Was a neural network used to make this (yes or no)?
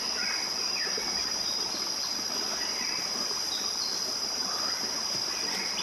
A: no